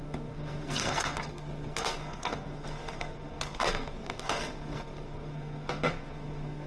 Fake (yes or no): yes